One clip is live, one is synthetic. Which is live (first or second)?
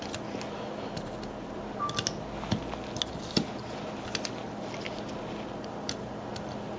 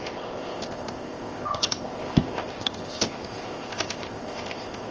first